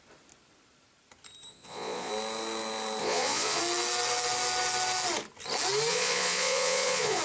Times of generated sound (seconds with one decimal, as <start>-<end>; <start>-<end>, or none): 1.5-2.1; 3.0-3.6; 5.9-7.2